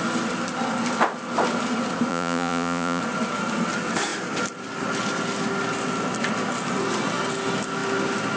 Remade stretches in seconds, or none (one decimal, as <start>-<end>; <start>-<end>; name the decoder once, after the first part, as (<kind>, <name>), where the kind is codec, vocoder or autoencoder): 2.1-3.0 (vocoder, Vocos)